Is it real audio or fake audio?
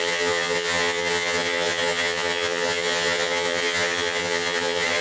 fake